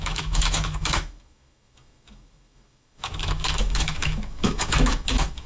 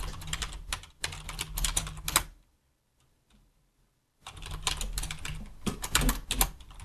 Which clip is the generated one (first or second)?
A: first